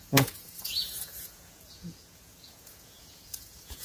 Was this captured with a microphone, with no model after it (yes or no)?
no